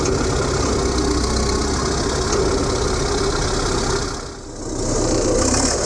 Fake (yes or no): no